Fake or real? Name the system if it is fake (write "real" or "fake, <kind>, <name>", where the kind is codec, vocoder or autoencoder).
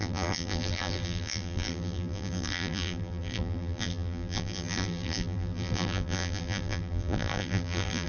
fake, vocoder, BigVGAN v2